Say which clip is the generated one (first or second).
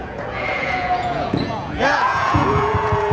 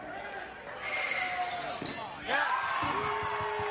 first